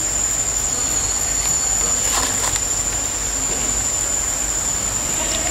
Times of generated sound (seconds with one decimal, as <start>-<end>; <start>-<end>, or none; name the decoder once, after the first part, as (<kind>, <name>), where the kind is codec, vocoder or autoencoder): none